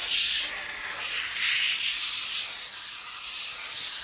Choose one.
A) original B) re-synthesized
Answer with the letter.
A